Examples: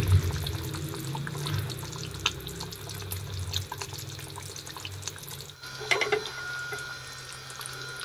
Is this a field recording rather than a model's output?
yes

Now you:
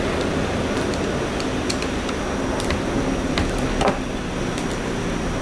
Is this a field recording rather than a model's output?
yes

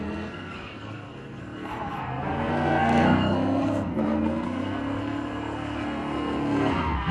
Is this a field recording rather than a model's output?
no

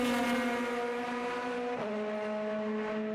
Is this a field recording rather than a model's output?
yes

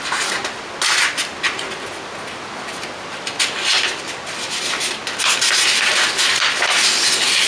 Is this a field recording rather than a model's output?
yes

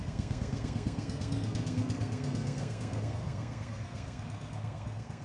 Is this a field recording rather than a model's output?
no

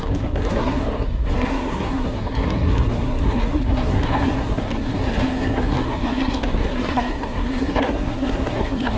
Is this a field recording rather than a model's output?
no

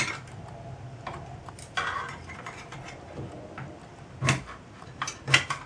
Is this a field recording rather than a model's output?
yes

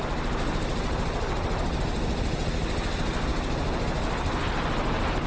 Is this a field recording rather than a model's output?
yes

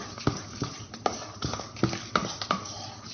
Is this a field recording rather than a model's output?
yes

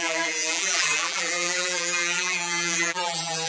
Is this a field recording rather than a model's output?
no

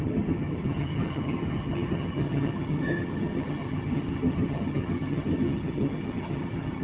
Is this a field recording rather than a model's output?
no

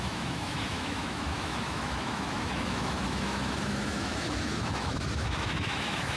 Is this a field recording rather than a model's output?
no